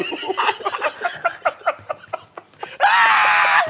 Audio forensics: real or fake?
real